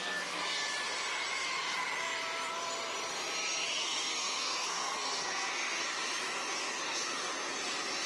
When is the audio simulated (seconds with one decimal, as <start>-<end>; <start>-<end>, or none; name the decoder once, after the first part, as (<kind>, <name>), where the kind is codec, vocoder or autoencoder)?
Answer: 0.0-0.4 (codec, SNAC); 3.8-5.8

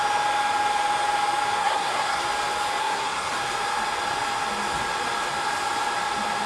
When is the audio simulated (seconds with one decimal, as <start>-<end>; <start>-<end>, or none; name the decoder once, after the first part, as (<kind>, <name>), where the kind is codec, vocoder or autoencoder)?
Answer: 1.6-2.2 (codec, SNAC); 2.8-3.3

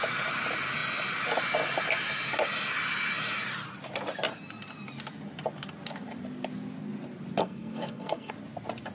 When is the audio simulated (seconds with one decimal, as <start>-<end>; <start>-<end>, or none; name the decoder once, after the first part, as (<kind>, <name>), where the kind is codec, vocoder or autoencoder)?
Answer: 7.4-8.3 (codec, SNAC)

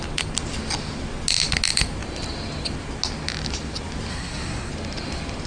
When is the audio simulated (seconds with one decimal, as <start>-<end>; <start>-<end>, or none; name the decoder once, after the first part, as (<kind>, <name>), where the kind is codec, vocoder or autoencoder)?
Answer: 4.1-4.7 (codec, SNAC)